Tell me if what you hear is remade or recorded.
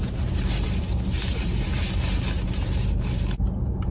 remade